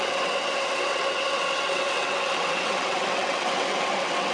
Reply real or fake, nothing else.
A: fake